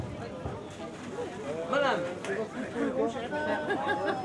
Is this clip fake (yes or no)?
no